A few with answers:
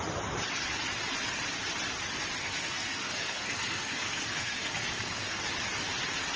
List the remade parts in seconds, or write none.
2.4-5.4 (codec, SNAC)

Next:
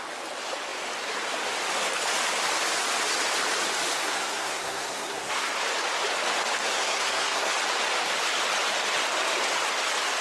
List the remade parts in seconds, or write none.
4.0-5.5 (codec, SNAC); 6.6-7.5

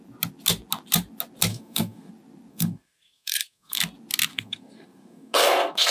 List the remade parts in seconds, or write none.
1.5-2.1 (codec, SNAC); 2.5-3.8; 4.3-5.9

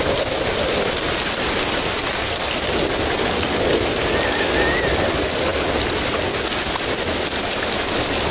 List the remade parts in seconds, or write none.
none

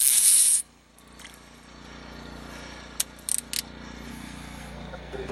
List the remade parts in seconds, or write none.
0.0-0.9 (codec, SNAC); 4.1-5.3

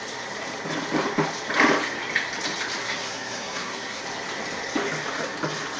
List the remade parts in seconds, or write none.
2.8-4.0 (codec, SNAC)